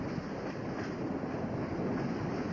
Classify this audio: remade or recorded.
recorded